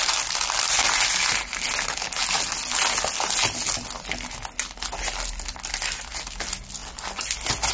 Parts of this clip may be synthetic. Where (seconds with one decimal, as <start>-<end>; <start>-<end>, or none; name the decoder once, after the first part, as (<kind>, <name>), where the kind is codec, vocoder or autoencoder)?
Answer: none